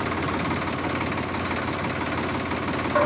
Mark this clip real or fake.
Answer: real